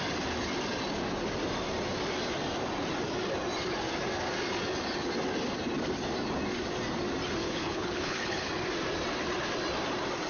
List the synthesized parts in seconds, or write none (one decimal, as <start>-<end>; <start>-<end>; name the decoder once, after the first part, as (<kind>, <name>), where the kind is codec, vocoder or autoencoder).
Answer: 7.4-8.5 (codec, HILCodec)